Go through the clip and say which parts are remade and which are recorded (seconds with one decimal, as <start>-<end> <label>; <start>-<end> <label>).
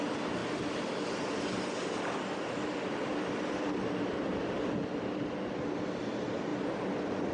0.0-7.3 recorded